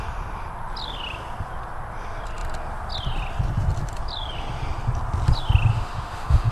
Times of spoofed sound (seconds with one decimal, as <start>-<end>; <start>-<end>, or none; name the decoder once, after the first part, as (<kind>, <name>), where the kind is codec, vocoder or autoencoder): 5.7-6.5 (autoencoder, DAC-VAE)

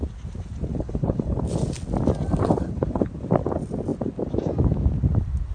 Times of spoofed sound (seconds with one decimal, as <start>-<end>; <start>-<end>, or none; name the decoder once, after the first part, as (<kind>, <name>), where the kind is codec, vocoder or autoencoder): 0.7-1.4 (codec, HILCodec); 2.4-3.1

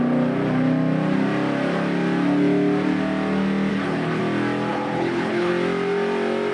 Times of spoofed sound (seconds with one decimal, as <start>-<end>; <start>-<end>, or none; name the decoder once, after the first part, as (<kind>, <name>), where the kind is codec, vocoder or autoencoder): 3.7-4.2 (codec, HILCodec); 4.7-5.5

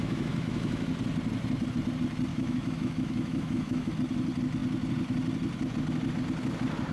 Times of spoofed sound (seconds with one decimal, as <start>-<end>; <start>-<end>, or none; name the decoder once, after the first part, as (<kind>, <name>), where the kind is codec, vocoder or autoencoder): 0.0-0.9 (autoencoder, DAC-VAE); 2.3-3.9

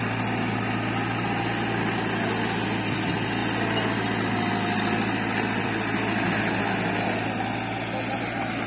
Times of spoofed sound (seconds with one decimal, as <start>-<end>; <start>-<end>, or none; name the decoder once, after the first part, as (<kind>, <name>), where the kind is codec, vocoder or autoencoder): none

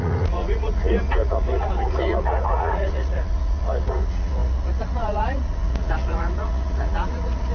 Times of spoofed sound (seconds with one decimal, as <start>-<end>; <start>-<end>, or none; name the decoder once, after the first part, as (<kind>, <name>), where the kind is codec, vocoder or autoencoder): 0.0-7.5 (vocoder, Vocos)

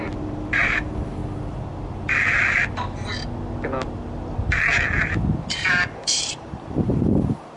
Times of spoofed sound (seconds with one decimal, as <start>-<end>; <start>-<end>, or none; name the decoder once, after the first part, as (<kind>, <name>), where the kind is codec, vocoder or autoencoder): 0.0-1.2 (vocoder, BigVGAN v2); 5.7-7.6